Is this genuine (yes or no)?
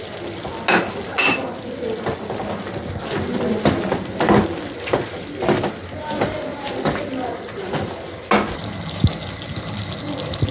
yes